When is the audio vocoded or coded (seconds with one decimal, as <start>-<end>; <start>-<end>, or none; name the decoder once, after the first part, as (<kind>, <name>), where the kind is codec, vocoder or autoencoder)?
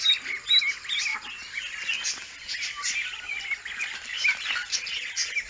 4.1-5.0 (vocoder, BigVGAN v2)